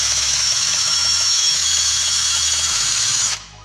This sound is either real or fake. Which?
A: fake